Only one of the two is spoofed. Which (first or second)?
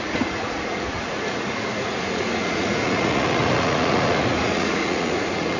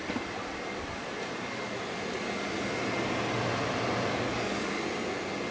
first